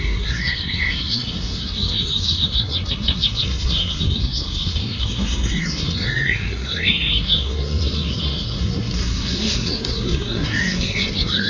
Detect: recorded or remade remade